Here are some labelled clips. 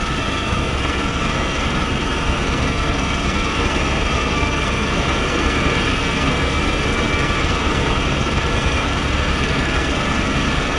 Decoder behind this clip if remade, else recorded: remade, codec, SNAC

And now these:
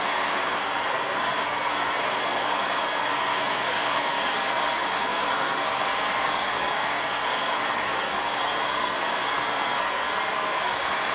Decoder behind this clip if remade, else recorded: remade, codec, SNAC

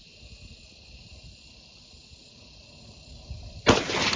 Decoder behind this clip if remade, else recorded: recorded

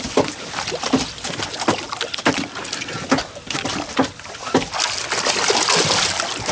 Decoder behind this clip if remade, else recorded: recorded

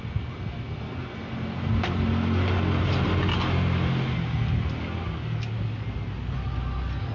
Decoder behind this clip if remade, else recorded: recorded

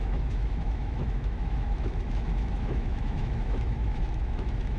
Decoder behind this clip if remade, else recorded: remade, autoencoder, DAC-VAE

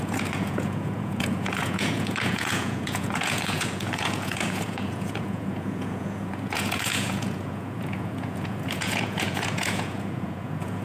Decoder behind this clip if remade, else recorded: remade, vocoder, Vocos